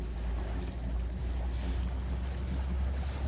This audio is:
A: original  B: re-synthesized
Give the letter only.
A